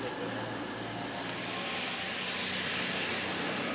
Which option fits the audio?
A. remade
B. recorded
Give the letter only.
B